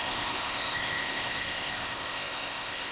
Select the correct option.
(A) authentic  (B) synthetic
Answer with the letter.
B